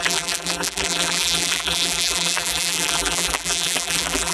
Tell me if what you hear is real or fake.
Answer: fake